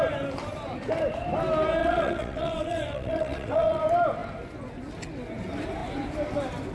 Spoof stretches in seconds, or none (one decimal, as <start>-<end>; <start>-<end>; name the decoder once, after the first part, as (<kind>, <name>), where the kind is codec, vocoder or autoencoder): 1.8-3.8 (vocoder, WaveNeXt)